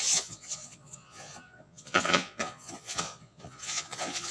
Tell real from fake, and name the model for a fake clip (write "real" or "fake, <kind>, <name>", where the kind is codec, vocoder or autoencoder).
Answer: fake, vocoder, Vocos